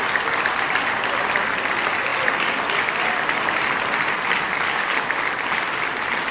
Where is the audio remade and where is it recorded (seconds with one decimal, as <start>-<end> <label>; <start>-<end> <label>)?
0.0-6.3 recorded